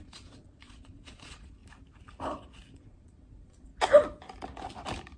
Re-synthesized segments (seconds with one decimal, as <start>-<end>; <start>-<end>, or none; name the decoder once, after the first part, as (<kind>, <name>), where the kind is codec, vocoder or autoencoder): 0.0-1.6 (vocoder, Vocos); 2.7-3.7